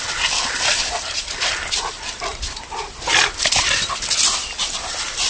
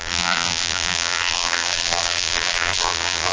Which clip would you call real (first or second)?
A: first